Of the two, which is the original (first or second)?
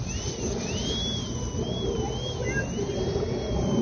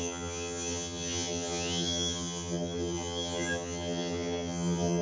first